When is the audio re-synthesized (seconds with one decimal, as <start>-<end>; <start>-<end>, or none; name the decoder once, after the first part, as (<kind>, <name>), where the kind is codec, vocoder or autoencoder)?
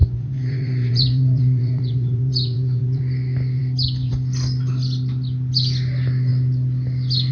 0.0-3.0 (vocoder, Vocos)